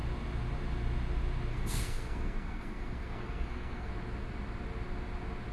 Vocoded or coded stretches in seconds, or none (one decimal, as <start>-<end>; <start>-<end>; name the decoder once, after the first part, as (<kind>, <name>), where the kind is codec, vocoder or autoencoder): 1.5-3.9 (codec, SNAC)